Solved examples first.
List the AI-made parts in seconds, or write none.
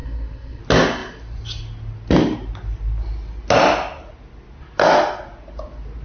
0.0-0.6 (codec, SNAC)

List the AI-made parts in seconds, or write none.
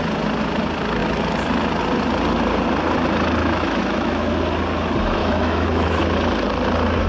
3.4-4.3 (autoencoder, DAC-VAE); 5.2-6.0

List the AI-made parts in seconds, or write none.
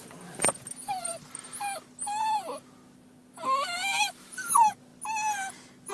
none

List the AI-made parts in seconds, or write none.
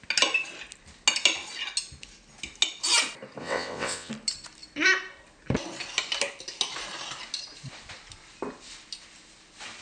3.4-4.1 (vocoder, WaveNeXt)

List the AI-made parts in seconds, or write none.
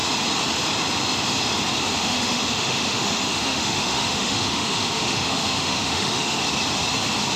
2.0-6.4 (autoencoder, DAC-VAE)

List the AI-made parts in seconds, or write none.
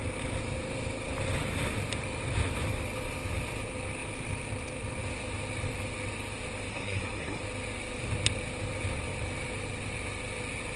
6.7-7.4 (codec, SNAC)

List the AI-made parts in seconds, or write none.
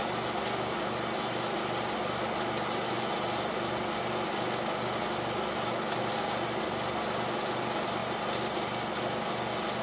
none